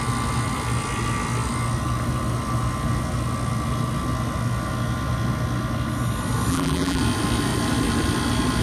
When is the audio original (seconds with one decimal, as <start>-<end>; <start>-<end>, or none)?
0.0-6.5; 7.0-8.6

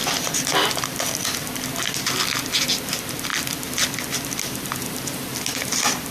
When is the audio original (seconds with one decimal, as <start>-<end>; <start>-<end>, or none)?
0.0-6.1

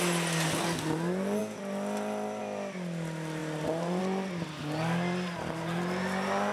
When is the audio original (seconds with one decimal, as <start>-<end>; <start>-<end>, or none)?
0.0-6.5

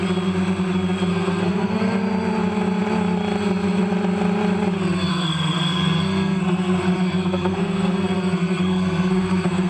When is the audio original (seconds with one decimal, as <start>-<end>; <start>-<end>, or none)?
0.0-1.1; 2.0-5.1